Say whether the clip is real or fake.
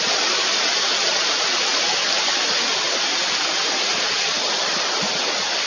real